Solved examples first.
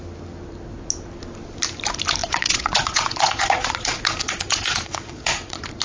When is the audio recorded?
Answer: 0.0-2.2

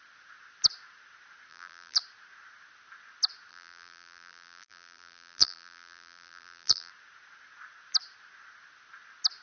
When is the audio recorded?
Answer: 0.0-1.5; 2.0-3.5; 6.9-9.4

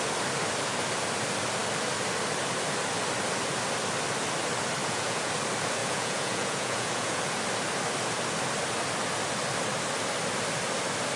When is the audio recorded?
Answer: 0.0-4.8; 5.3-5.8; 7.2-11.2